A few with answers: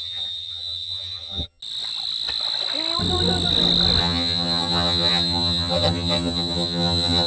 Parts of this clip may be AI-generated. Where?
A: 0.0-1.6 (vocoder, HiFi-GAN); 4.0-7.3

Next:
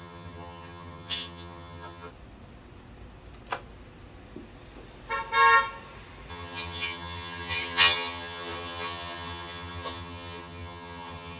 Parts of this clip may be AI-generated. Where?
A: 0.0-2.1 (vocoder, HiFi-GAN); 6.3-11.4